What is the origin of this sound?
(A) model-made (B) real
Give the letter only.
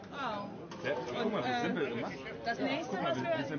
B